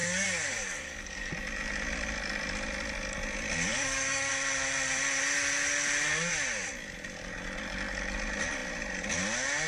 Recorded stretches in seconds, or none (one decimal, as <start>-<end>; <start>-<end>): 1.3-3.7; 4.3-9.7